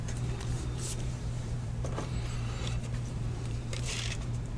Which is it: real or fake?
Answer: fake